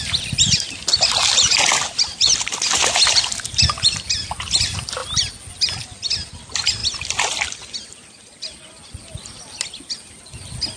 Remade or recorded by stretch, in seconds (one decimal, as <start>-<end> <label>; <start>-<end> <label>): 0.0-10.8 recorded

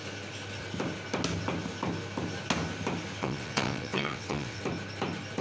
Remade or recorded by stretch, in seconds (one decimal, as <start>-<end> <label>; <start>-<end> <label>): 0.0-3.2 recorded; 3.2-4.6 remade; 4.6-5.4 recorded

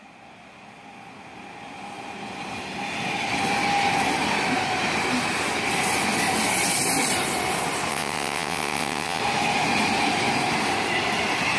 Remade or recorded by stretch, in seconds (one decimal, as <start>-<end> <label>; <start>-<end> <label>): 0.0-7.9 recorded; 7.9-9.2 remade; 9.2-11.6 recorded